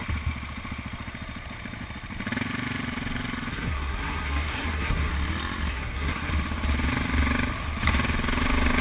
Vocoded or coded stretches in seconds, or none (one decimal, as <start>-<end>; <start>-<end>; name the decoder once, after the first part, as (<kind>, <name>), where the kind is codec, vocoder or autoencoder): 3.5-5.1 (codec, SNAC); 5.7-6.3